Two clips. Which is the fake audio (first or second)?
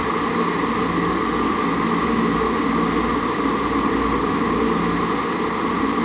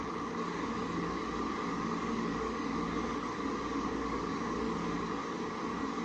second